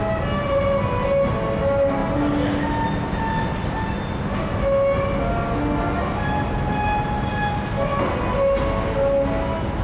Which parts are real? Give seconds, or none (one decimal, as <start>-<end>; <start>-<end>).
0.0-9.8